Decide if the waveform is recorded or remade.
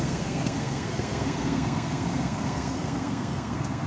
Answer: remade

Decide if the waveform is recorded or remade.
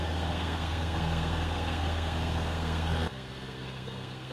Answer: remade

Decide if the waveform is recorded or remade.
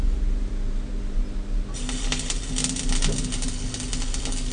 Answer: recorded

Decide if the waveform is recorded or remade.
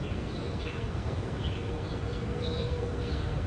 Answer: remade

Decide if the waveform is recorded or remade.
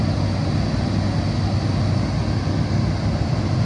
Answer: recorded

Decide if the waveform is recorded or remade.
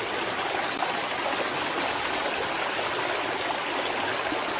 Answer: recorded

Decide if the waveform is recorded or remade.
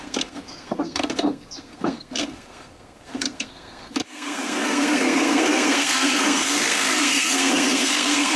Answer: remade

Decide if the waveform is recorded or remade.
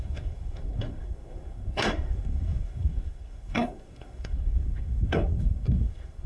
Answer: remade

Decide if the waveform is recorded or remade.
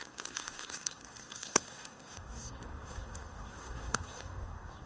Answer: remade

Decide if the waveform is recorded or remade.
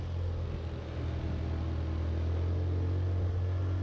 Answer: recorded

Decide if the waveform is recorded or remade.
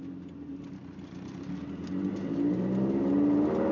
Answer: recorded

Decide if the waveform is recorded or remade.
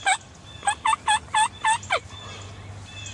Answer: recorded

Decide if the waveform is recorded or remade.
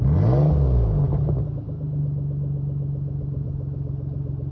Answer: recorded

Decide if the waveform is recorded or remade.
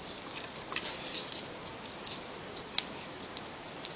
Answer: recorded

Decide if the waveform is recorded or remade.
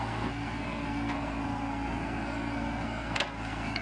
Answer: remade